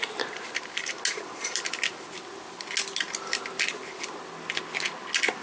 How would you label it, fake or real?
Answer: real